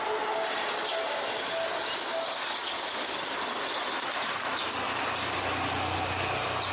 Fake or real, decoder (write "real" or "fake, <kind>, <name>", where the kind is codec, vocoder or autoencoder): real